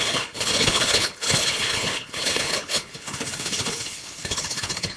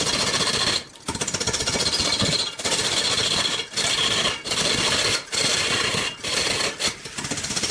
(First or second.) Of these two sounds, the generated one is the first